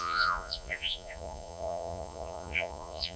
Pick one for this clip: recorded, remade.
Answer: remade